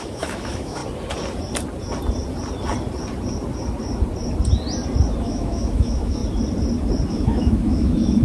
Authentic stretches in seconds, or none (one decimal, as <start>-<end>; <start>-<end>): 0.8-5.2; 6.2-7.1